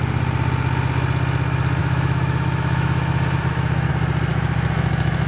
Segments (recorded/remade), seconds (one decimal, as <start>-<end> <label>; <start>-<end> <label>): 0.0-1.8 recorded; 1.8-3.9 remade; 3.9-4.3 recorded; 4.3-5.3 remade